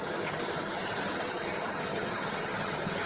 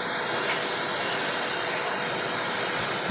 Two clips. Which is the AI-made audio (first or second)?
first